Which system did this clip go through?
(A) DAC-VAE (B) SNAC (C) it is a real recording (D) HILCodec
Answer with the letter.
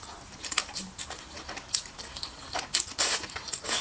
C